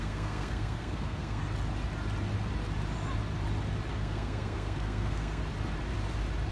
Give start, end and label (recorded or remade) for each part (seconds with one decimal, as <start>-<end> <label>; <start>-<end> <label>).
0.0-1.4 remade; 1.4-3.9 recorded; 3.9-5.4 remade; 5.4-6.5 recorded